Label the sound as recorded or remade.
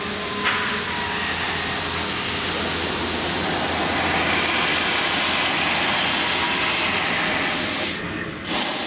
recorded